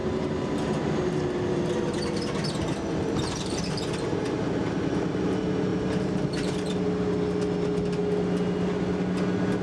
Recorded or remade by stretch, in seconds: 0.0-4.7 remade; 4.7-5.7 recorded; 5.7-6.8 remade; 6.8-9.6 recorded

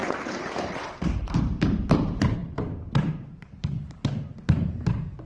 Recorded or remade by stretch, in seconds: 0.0-5.3 remade

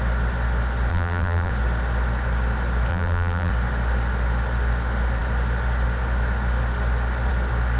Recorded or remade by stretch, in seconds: 0.0-0.9 recorded; 0.9-1.5 remade; 1.5-2.9 recorded; 2.9-3.5 remade; 3.5-7.8 recorded

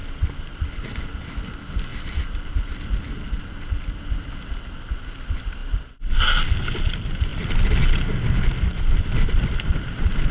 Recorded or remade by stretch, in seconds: 0.0-1.9 recorded; 1.9-2.7 remade; 2.7-10.3 recorded